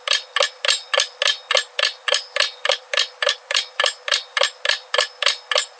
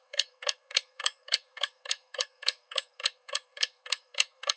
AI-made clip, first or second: second